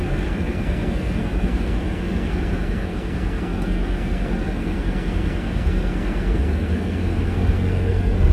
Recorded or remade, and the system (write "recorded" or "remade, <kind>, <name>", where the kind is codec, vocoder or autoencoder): remade, codec, SNAC